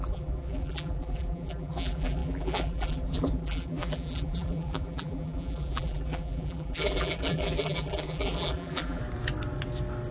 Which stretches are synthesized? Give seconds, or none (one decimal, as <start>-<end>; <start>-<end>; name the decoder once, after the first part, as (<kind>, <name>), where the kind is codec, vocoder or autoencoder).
0.0-9.0 (vocoder, BigVGAN v2)